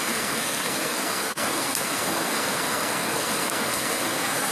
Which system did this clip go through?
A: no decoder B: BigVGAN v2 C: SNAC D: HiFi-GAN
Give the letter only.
C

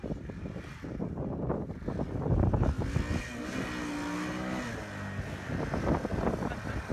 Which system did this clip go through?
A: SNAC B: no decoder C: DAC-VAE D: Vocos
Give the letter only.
B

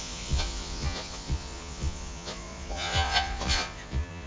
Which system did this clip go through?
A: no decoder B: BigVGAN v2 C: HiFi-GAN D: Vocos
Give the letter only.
D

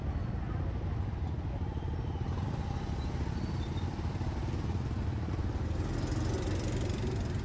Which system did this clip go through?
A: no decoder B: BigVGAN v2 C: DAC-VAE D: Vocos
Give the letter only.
A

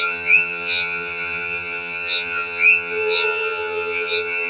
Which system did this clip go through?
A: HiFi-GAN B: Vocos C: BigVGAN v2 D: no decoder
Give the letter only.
A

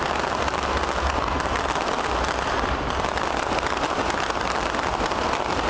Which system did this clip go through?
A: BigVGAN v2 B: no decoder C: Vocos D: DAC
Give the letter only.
B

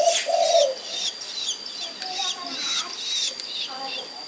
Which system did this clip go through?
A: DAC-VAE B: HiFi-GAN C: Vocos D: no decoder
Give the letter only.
D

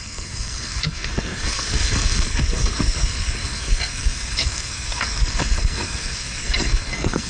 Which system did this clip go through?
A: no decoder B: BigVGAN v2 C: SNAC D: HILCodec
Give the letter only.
C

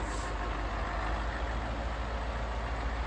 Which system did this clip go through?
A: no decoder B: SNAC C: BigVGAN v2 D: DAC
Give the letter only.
A